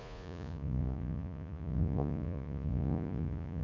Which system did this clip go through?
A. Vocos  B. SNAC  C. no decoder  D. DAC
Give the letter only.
A